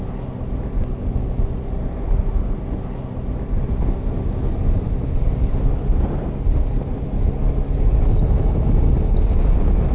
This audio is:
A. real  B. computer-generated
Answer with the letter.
A